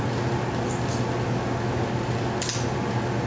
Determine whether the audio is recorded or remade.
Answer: recorded